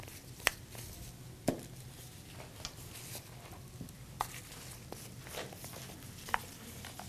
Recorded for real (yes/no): yes